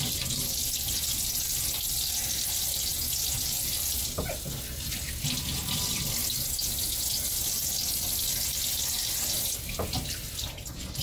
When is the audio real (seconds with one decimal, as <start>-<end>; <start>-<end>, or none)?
0.0-11.0